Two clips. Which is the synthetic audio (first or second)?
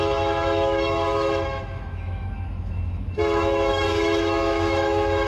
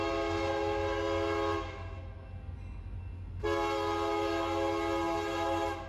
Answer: first